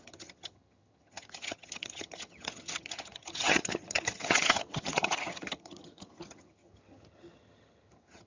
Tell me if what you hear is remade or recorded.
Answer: remade